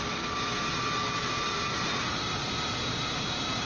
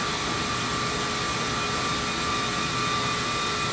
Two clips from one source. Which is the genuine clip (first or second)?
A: second